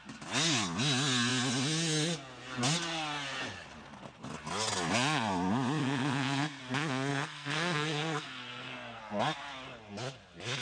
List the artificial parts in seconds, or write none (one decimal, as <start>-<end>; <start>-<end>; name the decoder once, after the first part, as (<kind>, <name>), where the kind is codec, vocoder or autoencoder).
5.8-6.6 (codec, SNAC); 7.1-9.0